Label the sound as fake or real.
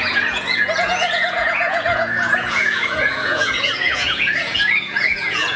fake